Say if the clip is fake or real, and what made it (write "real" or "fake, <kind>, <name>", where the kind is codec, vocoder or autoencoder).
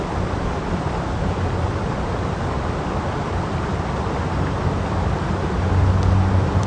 real